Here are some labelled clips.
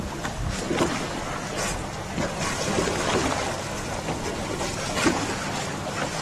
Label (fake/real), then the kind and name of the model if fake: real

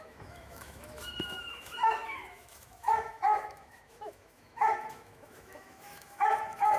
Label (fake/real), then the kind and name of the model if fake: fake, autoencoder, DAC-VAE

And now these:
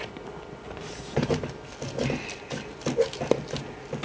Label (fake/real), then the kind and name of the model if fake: real